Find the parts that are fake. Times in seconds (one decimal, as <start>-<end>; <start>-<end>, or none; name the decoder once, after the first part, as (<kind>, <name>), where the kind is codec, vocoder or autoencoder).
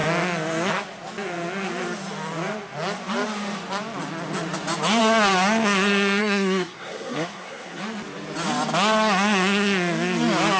6.2-7.8 (codec, SNAC)